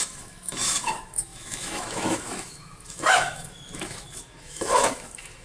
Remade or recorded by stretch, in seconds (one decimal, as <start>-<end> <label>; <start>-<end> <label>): 0.0-5.4 remade